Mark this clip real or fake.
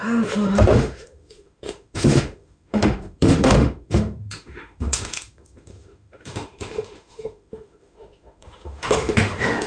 fake